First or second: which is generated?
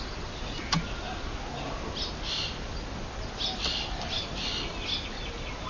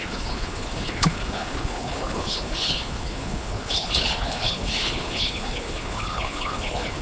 second